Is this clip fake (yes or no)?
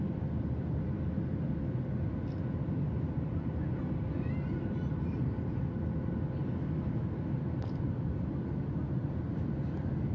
no